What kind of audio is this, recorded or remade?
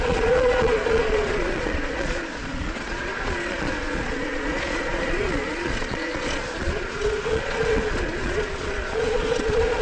remade